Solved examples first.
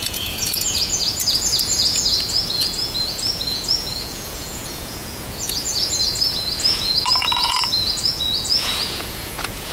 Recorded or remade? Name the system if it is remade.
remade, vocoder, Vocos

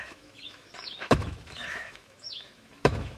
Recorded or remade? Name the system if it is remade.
remade, autoencoder, DAC-VAE